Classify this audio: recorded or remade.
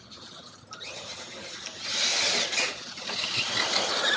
recorded